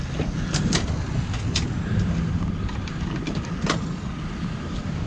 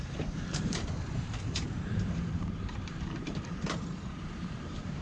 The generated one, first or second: second